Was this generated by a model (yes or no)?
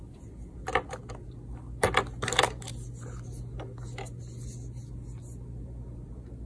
no